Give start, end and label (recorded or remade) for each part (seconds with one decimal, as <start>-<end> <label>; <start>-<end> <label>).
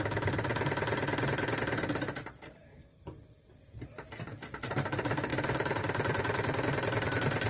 0.0-0.5 remade; 0.5-1.6 recorded; 1.6-7.5 remade